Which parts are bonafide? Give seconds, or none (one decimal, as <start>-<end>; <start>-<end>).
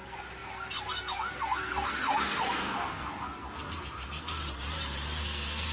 4.4-5.2